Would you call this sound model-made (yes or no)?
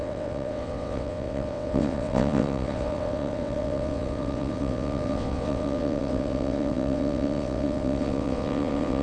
yes